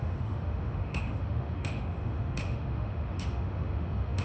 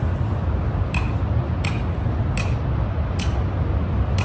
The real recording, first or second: second